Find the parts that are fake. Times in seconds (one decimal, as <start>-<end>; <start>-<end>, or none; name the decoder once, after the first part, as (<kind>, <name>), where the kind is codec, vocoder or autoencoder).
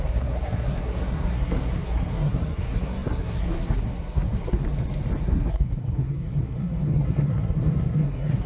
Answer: 0.0-4.6 (codec, SNAC); 5.2-8.5